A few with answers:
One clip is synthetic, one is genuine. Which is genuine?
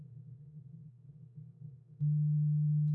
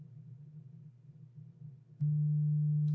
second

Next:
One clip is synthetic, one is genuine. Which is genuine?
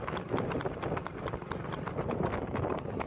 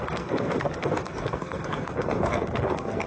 first